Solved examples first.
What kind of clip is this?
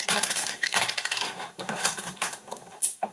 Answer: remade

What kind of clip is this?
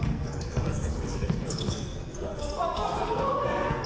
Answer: remade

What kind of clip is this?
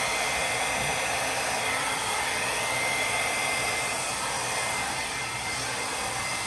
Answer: remade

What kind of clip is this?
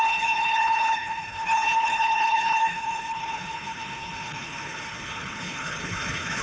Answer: remade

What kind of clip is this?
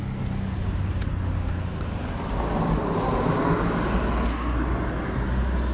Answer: recorded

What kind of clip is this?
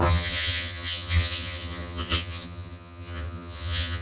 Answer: remade